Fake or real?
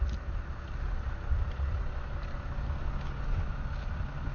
real